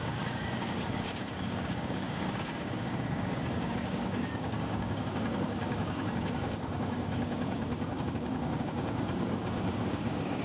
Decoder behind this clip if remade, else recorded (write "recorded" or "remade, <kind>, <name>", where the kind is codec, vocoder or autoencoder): remade, codec, DAC